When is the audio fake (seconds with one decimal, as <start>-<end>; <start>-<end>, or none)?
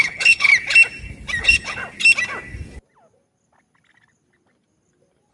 0.0-0.5; 1.4-1.8